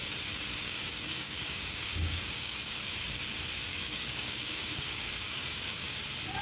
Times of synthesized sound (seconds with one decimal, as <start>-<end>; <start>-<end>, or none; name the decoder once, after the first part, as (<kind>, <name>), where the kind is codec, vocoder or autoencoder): 0.6-3.2 (codec, DAC); 3.7-6.0